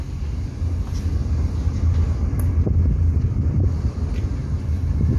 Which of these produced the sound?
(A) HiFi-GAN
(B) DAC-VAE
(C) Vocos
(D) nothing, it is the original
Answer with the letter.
D